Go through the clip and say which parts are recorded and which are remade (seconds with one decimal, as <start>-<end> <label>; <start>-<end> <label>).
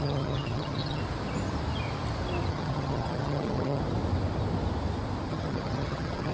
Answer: 0.0-1.0 remade; 1.0-2.5 recorded; 2.5-3.8 remade; 3.8-5.3 recorded; 5.3-6.3 remade